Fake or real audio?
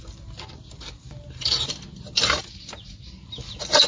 real